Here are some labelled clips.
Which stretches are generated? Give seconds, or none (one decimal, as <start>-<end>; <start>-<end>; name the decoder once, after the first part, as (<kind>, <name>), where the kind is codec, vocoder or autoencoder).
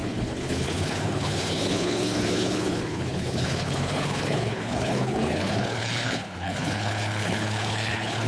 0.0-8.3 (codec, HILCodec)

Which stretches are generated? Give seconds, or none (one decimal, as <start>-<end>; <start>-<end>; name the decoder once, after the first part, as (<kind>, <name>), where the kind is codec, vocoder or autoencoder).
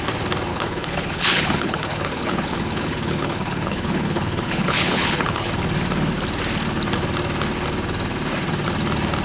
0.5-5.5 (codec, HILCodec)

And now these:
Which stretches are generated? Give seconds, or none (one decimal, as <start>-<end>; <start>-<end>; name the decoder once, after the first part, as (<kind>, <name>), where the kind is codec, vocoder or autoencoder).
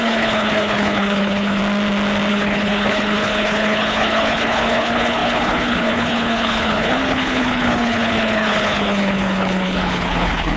0.0-1.6 (codec, HILCodec); 2.3-10.6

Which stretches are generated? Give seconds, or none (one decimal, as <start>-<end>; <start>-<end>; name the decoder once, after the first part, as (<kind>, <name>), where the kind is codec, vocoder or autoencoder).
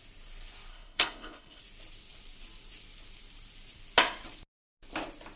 0.7-1.6 (codec, HILCodec)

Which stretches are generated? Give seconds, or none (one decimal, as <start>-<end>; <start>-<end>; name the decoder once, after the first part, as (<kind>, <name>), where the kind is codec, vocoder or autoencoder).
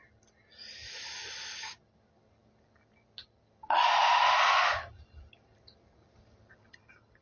none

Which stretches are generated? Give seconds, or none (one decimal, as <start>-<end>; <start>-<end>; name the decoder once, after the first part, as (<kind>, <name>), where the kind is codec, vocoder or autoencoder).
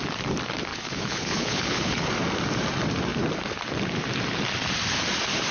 0.7-2.1 (codec, HILCodec)